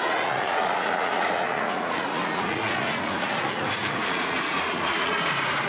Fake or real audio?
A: fake